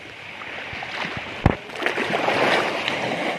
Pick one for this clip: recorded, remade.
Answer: recorded